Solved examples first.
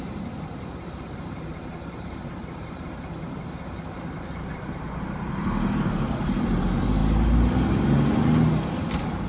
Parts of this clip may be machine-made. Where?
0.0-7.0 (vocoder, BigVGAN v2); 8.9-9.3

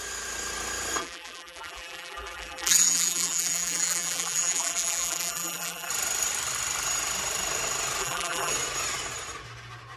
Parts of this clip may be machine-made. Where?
1.0-5.9 (vocoder, BigVGAN v2); 8.0-8.5